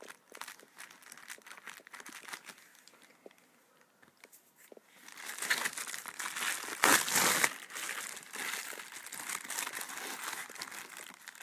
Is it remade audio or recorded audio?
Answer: recorded